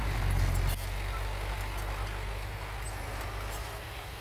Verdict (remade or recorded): recorded